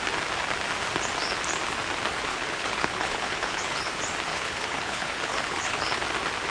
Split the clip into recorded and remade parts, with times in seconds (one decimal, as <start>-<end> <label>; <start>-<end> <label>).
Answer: 0.0-2.3 recorded; 2.3-3.9 remade; 3.9-4.3 recorded; 4.3-6.0 remade; 6.0-6.5 recorded